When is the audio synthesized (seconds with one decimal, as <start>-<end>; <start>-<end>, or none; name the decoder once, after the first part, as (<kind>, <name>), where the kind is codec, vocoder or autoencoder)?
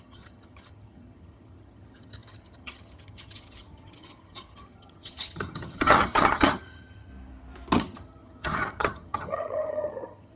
0.0-7.1 (vocoder, HiFi-GAN); 7.8-10.4